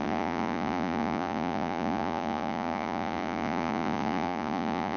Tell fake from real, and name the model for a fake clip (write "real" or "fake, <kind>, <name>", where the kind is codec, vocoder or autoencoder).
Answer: fake, vocoder, Vocos